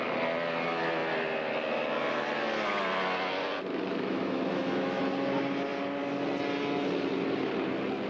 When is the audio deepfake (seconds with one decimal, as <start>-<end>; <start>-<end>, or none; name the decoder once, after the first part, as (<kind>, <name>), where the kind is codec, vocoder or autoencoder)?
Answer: 3.7-5.0 (autoencoder, DAC-VAE)